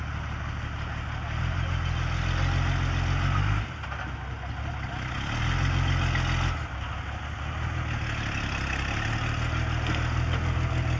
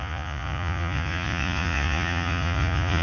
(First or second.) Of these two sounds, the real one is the first